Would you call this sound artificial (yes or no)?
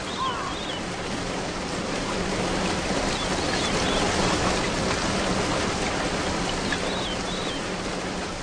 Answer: no